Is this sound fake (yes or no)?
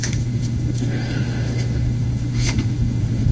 yes